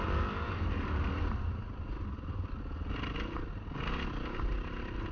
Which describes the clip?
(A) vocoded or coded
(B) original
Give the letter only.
B